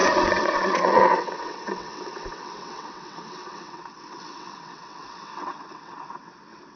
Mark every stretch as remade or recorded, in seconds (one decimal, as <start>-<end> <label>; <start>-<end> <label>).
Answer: 0.0-6.8 remade

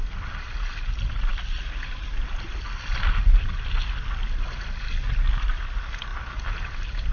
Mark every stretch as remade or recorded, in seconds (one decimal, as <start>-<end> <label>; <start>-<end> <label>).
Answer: 0.0-7.1 recorded